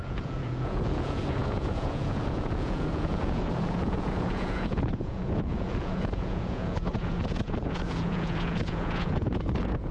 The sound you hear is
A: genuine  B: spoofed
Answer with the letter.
B